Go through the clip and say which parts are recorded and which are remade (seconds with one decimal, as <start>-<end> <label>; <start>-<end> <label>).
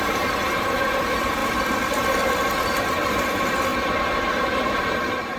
0.0-1.4 remade; 1.4-2.3 recorded; 2.3-3.7 remade; 3.7-4.6 recorded; 4.6-5.4 remade